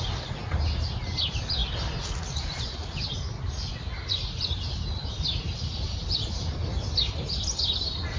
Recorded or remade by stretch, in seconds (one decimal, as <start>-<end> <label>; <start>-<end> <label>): 0.0-8.2 recorded